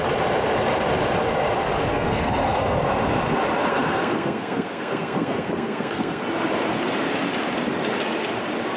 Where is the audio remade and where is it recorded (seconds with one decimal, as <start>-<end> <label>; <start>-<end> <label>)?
0.0-1.9 recorded; 1.9-2.8 remade; 2.8-3.7 recorded; 3.7-6.2 remade; 6.2-8.8 recorded